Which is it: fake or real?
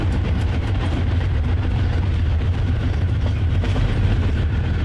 fake